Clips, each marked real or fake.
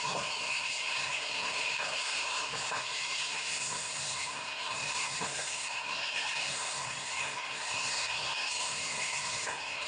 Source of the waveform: fake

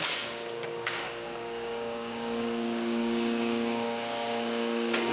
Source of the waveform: fake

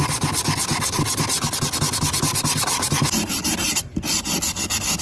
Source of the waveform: real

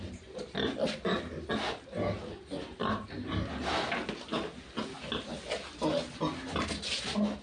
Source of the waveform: real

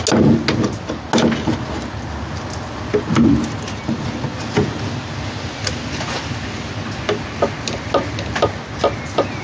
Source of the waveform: real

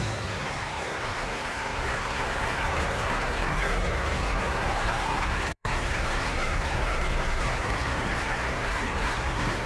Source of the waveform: fake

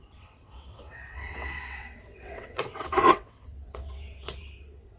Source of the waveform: fake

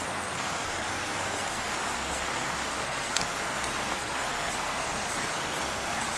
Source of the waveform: fake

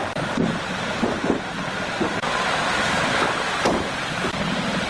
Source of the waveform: real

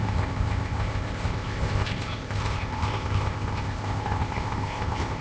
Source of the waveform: fake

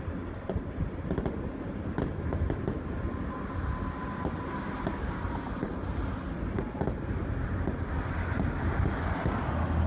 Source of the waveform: real